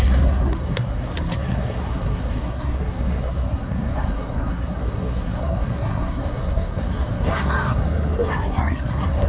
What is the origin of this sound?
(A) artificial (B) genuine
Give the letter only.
A